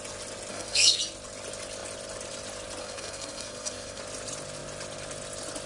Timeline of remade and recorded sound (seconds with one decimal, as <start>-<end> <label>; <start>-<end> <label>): 0.0-0.5 recorded; 0.5-1.0 remade; 1.0-2.8 recorded; 2.8-4.0 remade; 4.0-5.7 recorded